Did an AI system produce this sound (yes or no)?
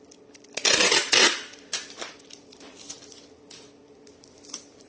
no